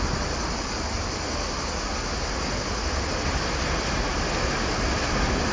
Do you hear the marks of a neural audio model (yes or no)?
no